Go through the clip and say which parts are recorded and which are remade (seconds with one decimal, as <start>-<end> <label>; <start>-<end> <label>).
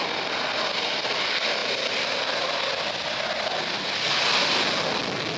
0.0-5.4 recorded